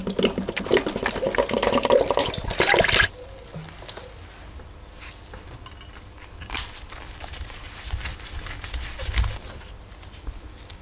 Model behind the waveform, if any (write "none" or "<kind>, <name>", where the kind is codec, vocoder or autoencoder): none